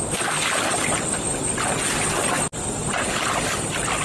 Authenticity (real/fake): real